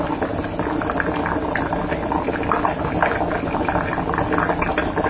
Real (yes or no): yes